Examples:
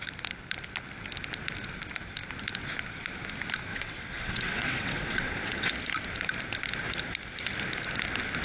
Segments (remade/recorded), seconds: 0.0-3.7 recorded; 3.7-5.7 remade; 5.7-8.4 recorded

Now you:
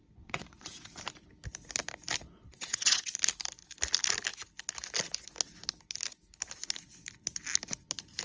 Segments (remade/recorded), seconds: 0.0-0.9 remade; 0.9-2.5 recorded; 2.5-3.1 remade; 3.1-8.2 recorded

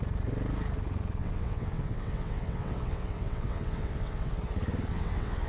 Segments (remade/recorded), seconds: 0.0-1.2 recorded; 1.2-4.4 remade; 4.4-4.9 recorded; 4.9-5.5 remade

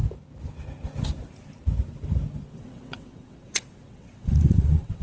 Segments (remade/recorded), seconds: 0.0-2.5 recorded; 2.5-5.0 remade